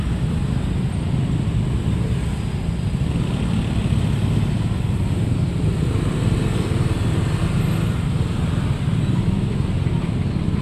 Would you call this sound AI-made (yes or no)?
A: no